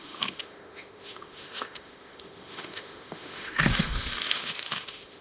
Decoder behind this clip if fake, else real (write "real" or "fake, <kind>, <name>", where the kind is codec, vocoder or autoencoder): fake, autoencoder, DAC-VAE